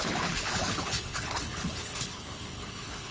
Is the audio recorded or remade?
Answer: remade